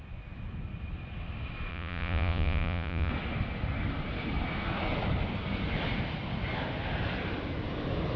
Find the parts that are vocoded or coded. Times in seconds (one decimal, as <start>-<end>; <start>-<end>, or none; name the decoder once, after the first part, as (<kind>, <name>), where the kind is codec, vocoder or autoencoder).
1.7-3.1 (vocoder, Vocos)